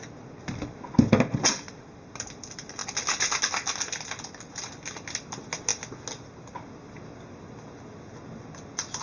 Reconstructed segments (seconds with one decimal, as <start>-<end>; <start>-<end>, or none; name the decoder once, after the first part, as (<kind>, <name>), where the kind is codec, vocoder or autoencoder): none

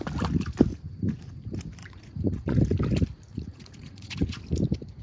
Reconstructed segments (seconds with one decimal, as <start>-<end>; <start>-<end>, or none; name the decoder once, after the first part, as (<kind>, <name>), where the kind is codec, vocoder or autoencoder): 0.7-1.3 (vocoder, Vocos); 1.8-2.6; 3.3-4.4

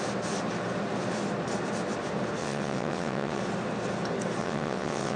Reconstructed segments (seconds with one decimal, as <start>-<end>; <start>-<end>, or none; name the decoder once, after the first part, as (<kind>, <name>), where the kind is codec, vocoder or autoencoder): 2.4-3.4 (vocoder, WaveNeXt); 4.4-5.2